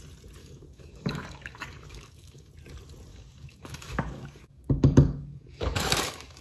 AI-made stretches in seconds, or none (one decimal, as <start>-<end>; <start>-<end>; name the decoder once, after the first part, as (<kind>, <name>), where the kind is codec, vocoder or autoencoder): 0.4-2.5 (codec, DAC); 3.1-6.4